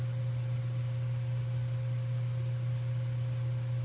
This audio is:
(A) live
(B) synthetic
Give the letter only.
A